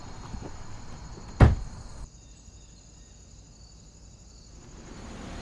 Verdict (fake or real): real